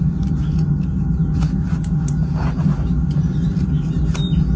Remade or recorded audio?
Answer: recorded